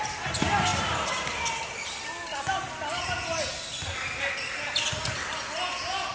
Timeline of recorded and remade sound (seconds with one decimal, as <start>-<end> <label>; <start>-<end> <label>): 0.0-6.1 recorded